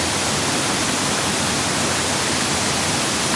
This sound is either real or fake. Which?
real